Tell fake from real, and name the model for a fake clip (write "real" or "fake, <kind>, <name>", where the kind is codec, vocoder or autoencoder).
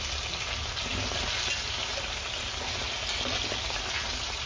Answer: real